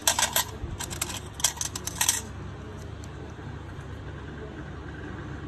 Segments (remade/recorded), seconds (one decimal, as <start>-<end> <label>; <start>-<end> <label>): 0.0-2.7 recorded; 2.7-4.0 remade; 4.0-5.5 recorded